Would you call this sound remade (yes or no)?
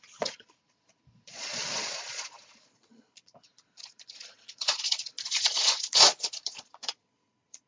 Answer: yes